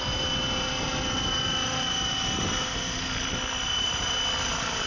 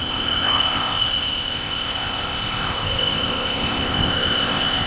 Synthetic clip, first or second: second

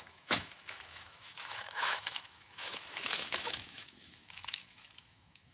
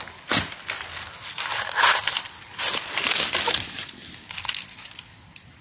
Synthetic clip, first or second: first